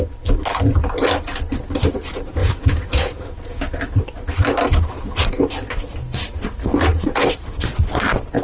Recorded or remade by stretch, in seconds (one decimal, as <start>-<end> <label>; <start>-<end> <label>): 0.0-2.4 recorded; 2.4-3.6 remade; 3.6-8.4 recorded